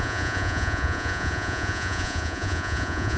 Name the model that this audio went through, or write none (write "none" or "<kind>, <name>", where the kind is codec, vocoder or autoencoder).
vocoder, Vocos